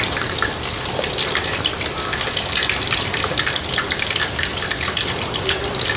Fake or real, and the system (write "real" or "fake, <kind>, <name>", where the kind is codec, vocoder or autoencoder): real